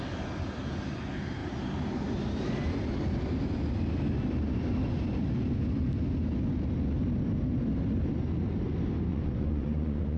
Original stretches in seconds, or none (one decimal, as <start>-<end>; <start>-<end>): 0.0-9.1